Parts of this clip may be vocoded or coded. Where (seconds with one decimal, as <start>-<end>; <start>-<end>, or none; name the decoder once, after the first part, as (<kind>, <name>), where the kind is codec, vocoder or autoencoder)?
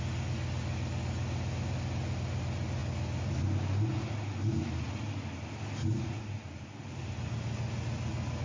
none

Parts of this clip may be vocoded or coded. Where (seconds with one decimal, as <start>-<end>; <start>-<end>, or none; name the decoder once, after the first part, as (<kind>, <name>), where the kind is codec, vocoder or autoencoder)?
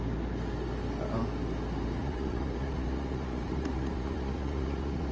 2.0-5.1 (vocoder, Vocos)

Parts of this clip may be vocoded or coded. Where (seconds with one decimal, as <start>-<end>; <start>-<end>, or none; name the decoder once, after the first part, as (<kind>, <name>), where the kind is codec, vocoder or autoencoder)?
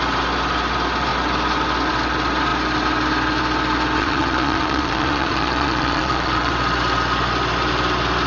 4.0-6.5 (vocoder, Vocos)